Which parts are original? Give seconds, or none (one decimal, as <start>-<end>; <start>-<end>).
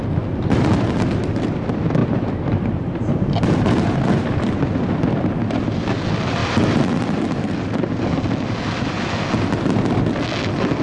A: 0.0-10.8